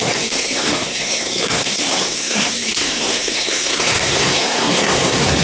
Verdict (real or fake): fake